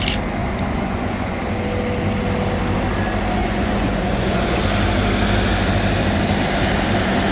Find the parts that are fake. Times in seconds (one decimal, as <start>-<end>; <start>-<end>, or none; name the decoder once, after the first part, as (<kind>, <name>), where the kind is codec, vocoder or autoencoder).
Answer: 0.4-1.4 (vocoder, Vocos); 3.4-4.6